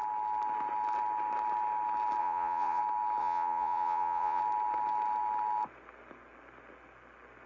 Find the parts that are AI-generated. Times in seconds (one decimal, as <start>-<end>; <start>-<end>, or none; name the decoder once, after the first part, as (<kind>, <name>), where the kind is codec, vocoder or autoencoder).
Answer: 2.2-2.8 (vocoder, Vocos); 3.2-4.4